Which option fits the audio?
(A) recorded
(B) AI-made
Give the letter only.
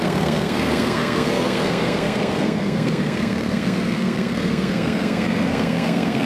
B